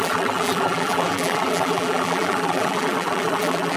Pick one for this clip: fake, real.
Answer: fake